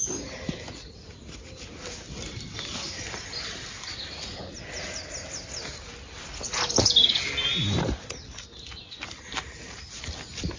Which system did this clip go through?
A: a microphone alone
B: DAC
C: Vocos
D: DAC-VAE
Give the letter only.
A